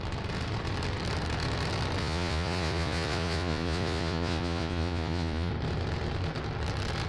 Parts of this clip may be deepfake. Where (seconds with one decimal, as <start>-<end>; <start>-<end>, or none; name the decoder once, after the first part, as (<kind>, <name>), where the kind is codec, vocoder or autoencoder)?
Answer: 2.0-5.5 (vocoder, Vocos)